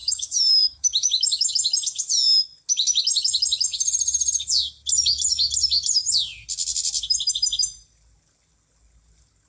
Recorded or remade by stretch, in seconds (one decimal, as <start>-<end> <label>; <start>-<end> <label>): 0.0-1.5 remade; 1.5-9.5 recorded